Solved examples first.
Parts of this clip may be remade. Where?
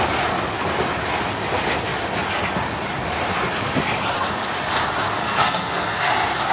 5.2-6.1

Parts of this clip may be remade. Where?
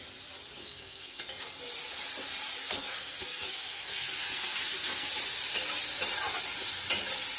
0.6-1.2; 2.6-5.1